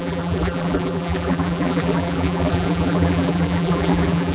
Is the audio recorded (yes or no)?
no